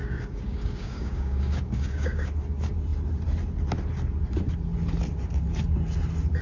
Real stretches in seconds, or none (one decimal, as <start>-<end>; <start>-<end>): 2.3-6.4